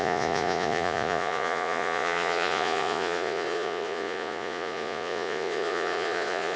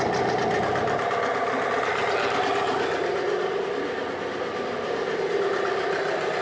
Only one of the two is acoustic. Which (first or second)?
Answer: second